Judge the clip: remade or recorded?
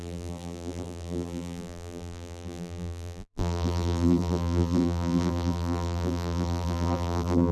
remade